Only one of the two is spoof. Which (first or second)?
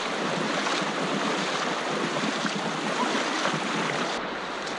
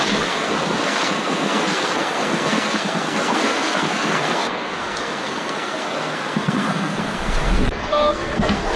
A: second